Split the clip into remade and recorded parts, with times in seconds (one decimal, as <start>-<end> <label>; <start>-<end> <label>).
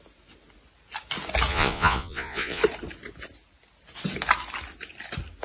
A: 0.0-1.5 recorded; 1.5-2.6 remade; 2.6-5.4 recorded